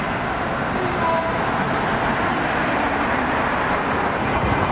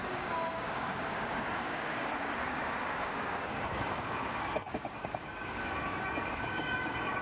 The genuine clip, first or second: first